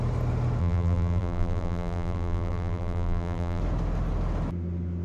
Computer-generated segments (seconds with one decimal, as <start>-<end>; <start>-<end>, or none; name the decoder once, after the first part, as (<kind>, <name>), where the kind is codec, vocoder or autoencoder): 0.6-3.6 (vocoder, BigVGAN v2)